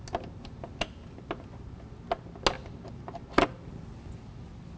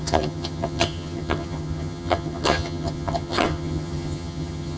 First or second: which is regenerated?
second